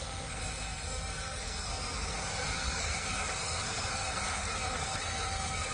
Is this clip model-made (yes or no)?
yes